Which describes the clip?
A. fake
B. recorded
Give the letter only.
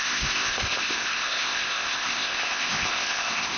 A